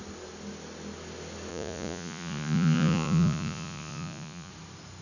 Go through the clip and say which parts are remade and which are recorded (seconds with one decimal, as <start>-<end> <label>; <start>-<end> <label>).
0.0-1.5 recorded; 1.5-4.5 remade; 4.5-5.0 recorded